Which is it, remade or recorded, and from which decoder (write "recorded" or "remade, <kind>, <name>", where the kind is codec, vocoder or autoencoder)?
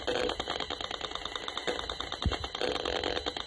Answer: recorded